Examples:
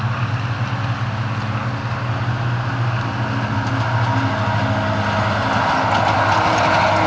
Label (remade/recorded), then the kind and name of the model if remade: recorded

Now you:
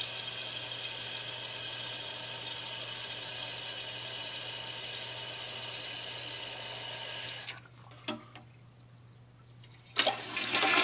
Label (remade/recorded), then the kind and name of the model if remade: recorded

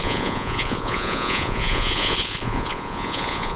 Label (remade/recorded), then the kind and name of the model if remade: remade, vocoder, Vocos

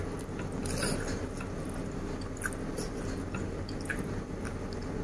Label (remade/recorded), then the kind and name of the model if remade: recorded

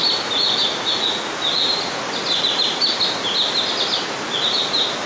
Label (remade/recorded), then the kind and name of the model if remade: recorded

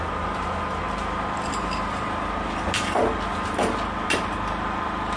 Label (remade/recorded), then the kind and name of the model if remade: recorded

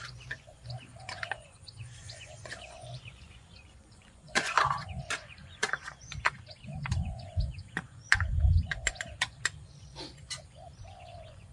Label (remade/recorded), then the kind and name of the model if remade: remade, vocoder, Vocos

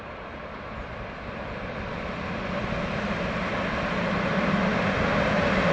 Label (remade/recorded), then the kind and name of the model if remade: recorded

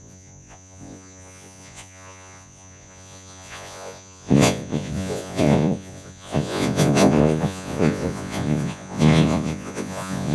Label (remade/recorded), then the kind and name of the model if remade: remade, vocoder, Vocos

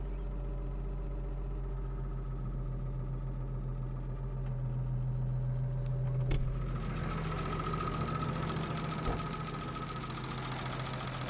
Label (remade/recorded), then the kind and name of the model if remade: recorded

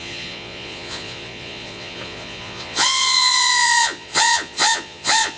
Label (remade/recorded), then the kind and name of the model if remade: remade, vocoder, Vocos